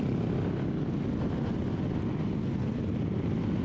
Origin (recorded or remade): recorded